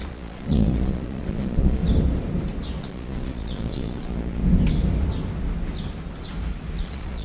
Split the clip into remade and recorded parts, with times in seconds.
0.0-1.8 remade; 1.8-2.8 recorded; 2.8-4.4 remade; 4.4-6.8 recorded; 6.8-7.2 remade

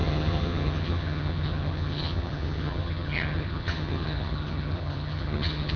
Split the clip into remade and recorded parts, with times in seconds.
0.0-5.8 remade

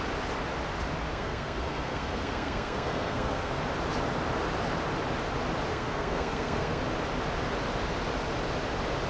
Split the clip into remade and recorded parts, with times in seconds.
0.0-1.1 recorded; 1.1-3.6 remade; 3.6-5.7 recorded; 5.7-6.8 remade; 6.8-9.1 recorded

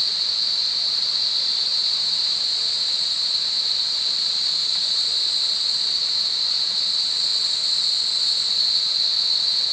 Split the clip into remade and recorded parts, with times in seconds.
0.0-1.7 recorded; 1.7-6.7 remade; 6.7-9.7 recorded

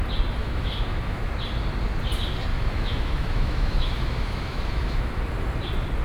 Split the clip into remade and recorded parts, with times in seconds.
0.0-0.4 recorded; 0.4-1.3 remade; 1.3-2.5 recorded; 2.5-5.2 remade; 5.2-6.0 recorded

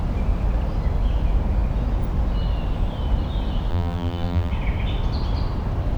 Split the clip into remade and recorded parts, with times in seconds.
0.0-3.7 recorded; 3.7-4.5 remade; 4.5-6.0 recorded